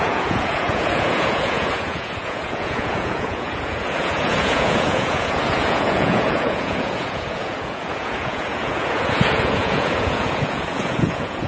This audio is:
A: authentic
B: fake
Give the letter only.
B